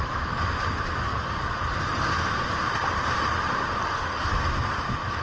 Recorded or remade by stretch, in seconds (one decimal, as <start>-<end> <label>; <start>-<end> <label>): 0.0-1.1 remade; 1.1-4.2 recorded; 4.2-5.2 remade